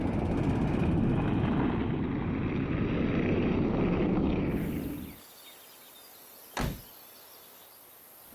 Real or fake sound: real